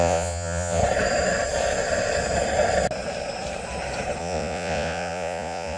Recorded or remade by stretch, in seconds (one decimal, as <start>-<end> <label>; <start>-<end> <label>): 0.0-0.8 remade; 0.8-4.2 recorded; 4.2-5.8 remade